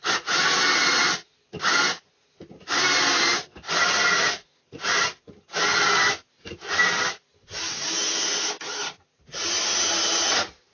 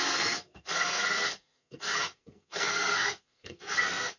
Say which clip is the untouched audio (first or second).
first